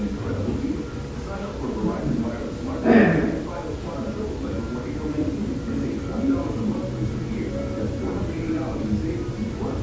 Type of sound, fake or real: real